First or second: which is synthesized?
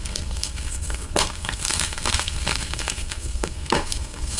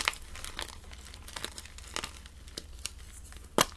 first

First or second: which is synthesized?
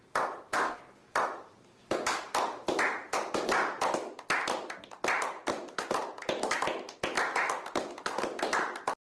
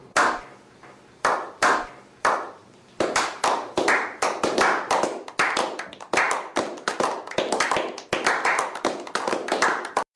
second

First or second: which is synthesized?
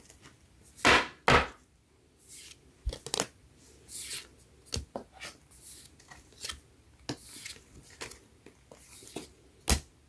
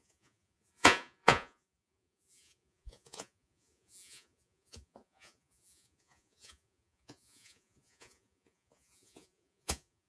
second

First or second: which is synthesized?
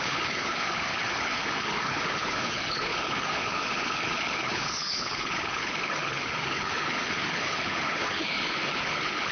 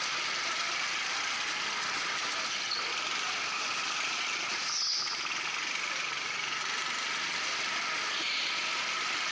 first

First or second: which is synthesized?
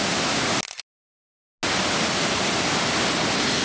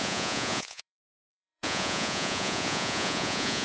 second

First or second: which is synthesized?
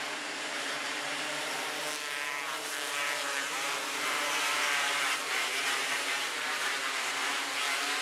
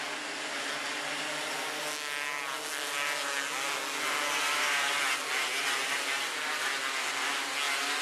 first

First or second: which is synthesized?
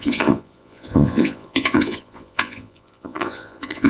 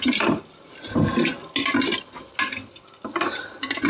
first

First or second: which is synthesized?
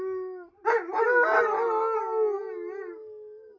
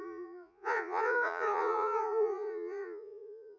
second